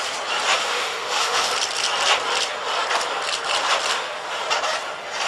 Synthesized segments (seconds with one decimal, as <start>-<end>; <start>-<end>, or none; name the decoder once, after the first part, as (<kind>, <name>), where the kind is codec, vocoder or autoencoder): 0.6-1.5 (autoencoder, DAC-VAE)